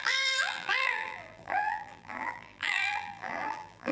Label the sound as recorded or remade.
remade